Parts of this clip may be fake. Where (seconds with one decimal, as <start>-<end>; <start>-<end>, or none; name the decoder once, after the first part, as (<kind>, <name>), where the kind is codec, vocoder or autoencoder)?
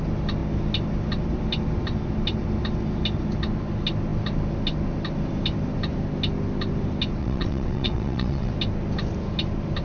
7.2-8.5 (vocoder, WaveNeXt)